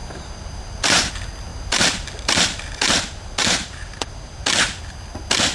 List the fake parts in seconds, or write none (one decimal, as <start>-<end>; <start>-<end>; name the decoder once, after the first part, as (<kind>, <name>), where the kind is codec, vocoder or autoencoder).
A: 0.0-1.1 (vocoder, BigVGAN v2); 1.5-4.8